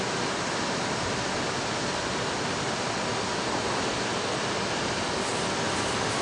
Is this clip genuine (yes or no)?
yes